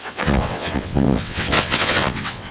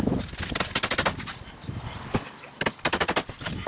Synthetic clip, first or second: first